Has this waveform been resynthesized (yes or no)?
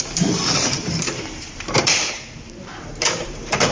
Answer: yes